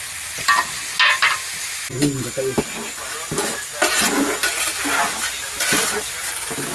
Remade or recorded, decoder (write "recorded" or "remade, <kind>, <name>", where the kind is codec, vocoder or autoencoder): recorded